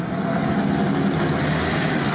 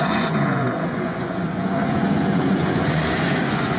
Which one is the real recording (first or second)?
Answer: first